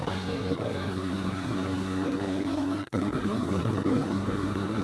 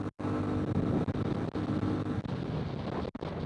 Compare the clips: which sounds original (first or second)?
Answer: second